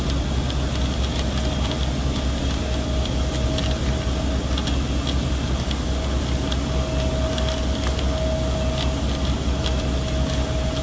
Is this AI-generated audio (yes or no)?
no